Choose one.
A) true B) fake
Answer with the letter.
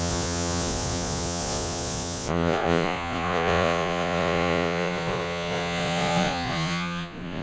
B